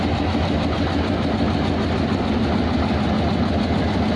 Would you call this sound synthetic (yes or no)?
no